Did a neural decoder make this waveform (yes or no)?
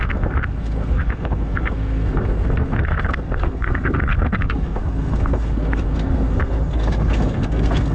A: yes